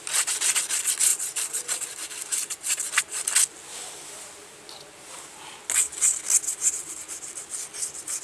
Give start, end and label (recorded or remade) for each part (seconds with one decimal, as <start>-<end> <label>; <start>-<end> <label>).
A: 0.0-1.1 recorded; 1.1-3.0 remade; 3.0-8.2 recorded